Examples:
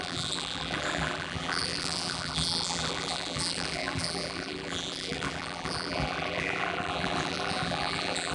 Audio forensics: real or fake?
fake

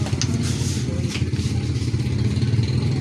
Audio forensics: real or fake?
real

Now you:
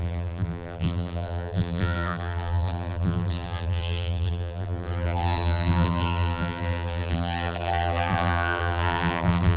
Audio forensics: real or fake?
fake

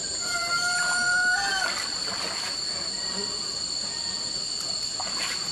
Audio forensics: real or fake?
fake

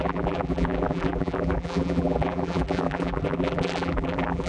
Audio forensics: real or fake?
fake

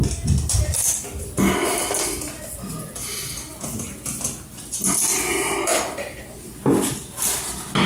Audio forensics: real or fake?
real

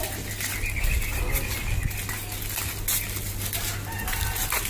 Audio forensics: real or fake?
real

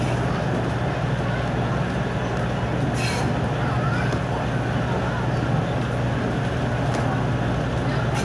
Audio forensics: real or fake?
real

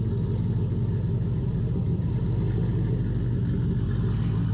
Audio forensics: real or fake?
real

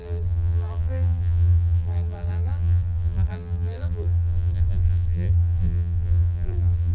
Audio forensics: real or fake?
fake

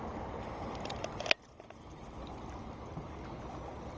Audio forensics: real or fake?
real